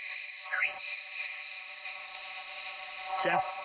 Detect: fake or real fake